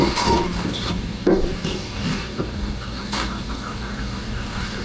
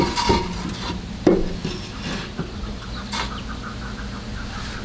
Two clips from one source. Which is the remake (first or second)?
first